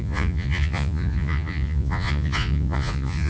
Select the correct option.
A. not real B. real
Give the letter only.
A